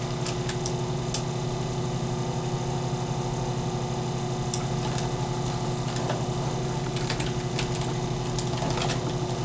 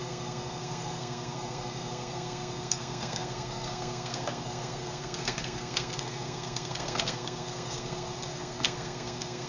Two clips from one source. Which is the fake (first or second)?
second